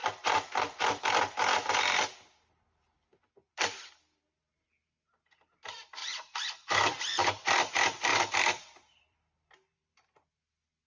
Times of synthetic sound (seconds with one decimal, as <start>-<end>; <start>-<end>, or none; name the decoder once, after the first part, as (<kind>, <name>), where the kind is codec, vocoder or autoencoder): 6.0-7.6 (vocoder, BigVGAN v2); 8.1-9.9